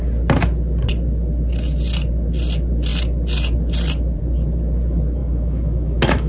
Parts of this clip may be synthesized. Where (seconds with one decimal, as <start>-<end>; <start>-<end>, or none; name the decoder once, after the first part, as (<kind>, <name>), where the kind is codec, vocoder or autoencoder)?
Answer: 5.2-6.3 (autoencoder, DAC-VAE)